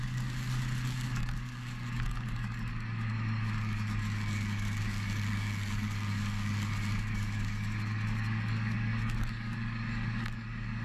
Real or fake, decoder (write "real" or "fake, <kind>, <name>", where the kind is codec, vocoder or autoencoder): fake, codec, DAC